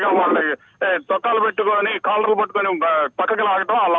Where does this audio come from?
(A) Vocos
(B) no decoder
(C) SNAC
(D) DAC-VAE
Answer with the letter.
B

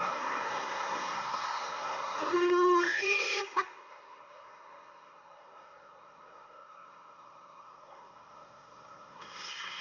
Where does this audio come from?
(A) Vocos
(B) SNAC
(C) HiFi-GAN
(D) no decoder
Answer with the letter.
B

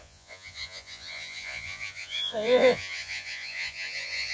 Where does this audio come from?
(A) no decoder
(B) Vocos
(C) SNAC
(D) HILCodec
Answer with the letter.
B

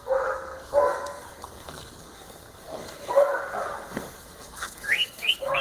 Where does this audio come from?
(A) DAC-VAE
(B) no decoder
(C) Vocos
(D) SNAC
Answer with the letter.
D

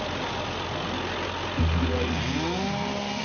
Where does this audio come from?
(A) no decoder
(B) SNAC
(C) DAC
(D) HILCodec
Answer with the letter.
A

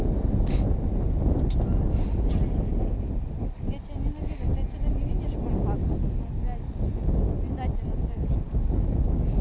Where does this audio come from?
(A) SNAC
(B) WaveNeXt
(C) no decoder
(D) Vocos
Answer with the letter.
C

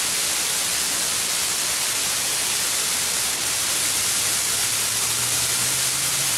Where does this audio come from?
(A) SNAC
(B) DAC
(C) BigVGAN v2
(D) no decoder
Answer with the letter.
D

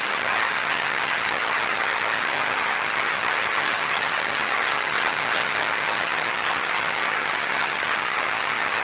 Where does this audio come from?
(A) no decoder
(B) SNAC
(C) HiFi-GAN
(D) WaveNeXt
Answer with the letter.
C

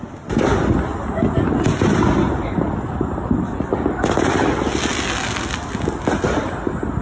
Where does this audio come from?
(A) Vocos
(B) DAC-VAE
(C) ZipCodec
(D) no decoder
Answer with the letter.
D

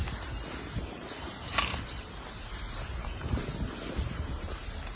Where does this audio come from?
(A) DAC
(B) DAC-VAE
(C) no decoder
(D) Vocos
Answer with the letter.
C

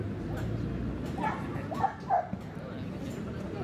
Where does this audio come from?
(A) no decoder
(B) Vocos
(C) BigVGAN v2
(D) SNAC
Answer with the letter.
A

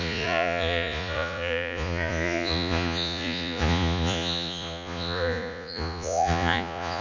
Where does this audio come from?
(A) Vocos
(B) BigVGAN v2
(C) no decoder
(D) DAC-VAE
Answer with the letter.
A